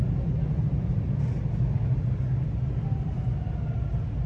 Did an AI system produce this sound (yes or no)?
no